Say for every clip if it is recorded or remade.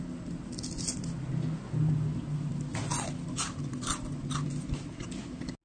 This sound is recorded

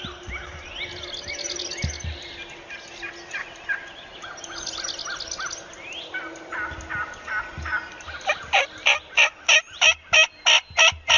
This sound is recorded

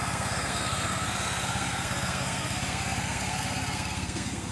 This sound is remade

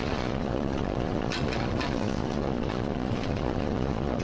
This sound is remade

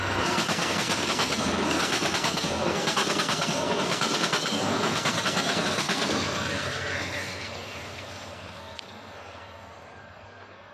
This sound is remade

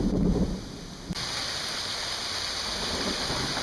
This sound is recorded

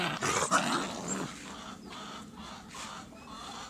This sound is recorded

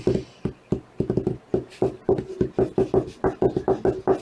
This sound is recorded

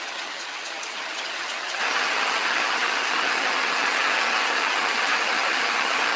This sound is remade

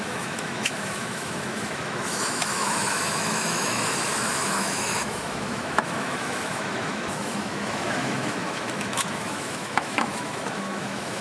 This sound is remade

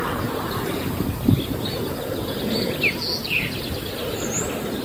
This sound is recorded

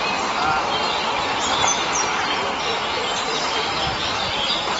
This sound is recorded